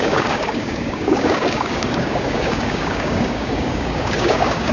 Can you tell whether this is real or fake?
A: fake